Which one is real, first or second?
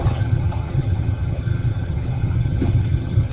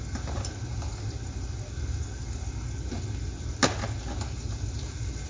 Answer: second